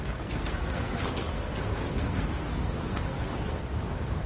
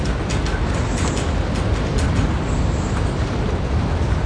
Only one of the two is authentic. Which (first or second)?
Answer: second